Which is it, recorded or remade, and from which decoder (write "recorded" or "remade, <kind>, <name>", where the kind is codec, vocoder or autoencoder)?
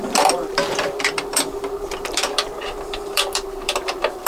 remade, vocoder, BigVGAN v2